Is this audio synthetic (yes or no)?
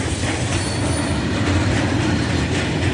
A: yes